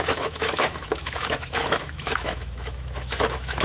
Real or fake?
fake